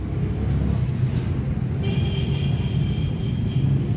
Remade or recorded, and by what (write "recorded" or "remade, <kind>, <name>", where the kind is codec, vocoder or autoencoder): recorded